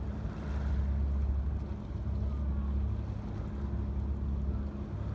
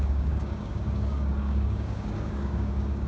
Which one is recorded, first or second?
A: first